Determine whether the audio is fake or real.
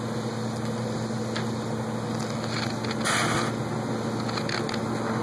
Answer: real